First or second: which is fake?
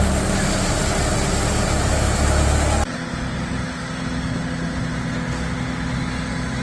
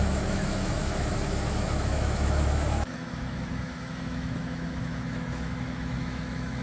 second